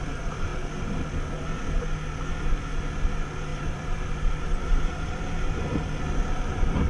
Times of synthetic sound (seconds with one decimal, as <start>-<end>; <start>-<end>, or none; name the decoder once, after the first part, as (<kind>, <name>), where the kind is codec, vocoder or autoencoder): 3.5-6.0 (vocoder, BigVGAN v2)